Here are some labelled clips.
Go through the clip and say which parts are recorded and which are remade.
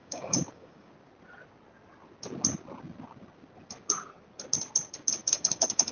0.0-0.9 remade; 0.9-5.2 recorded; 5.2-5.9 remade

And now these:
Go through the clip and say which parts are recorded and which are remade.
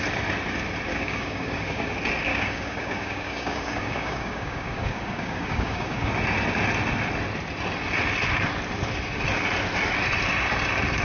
0.0-0.9 recorded; 0.9-1.9 remade; 1.9-2.3 recorded; 2.3-6.1 remade; 6.1-11.0 recorded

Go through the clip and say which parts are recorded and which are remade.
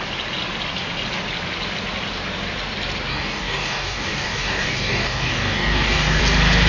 0.0-3.1 recorded; 3.1-6.2 remade; 6.2-6.7 recorded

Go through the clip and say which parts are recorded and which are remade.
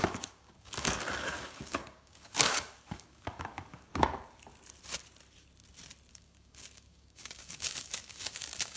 0.0-3.9 remade; 3.9-6.1 recorded; 6.1-8.8 remade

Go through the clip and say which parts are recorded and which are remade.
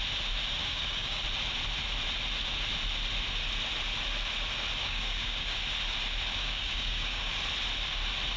0.0-0.6 recorded; 0.6-1.2 remade; 1.2-4.8 recorded; 4.8-5.6 remade; 5.6-6.4 recorded; 6.4-7.3 remade; 7.3-8.4 recorded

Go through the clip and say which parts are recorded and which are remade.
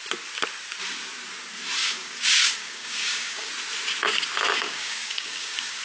0.0-1.8 recorded; 1.8-3.5 remade; 3.5-4.5 recorded; 4.5-5.8 remade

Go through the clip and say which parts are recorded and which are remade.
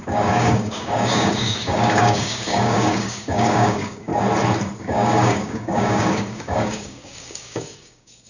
0.0-4.1 remade; 4.1-4.8 recorded; 4.8-8.3 remade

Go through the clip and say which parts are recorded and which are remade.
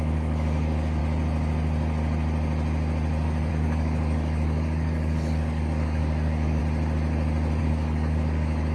0.0-1.0 remade; 1.0-3.5 recorded; 3.5-6.6 remade; 6.6-7.6 recorded; 7.6-8.7 remade